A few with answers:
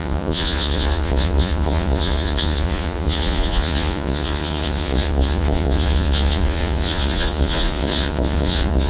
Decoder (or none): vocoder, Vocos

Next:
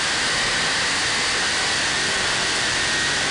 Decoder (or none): none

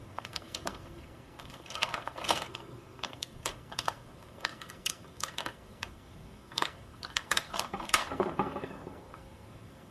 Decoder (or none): codec, SNAC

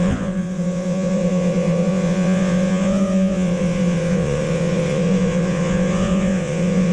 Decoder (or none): vocoder, Vocos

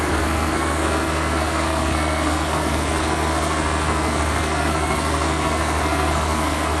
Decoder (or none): codec, SNAC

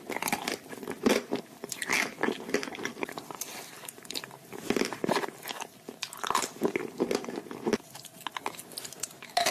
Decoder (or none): none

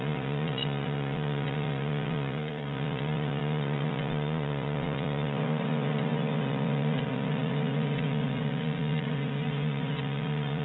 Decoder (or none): vocoder, Vocos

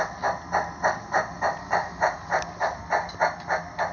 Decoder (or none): none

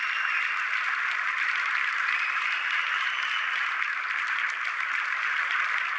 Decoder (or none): none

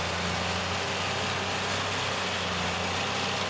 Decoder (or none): none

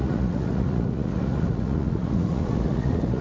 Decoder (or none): vocoder, Vocos